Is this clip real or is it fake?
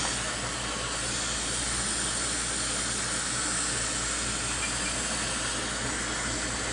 real